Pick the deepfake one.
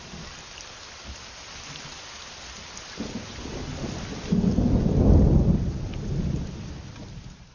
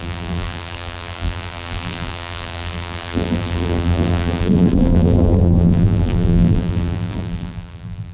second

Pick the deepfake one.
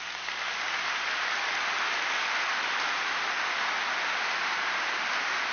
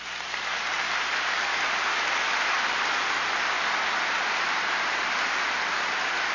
second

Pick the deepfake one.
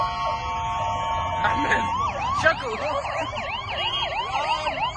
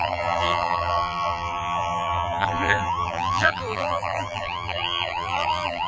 second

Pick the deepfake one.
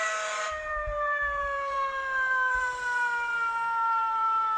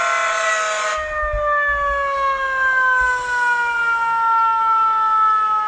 first